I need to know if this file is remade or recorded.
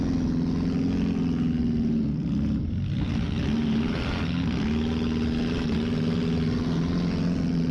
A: recorded